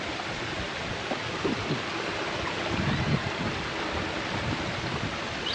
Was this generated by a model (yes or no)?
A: no